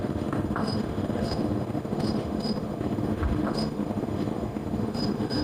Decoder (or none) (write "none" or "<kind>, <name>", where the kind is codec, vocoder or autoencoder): autoencoder, DAC-VAE